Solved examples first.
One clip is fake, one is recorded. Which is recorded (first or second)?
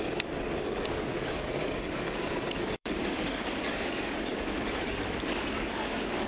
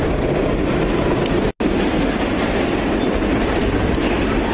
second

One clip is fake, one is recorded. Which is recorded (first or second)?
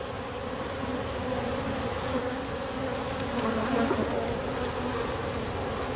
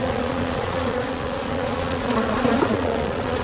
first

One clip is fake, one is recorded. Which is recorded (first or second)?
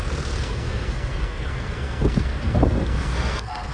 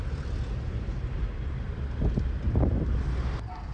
second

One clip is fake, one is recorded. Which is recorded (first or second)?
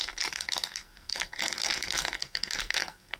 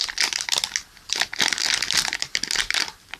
second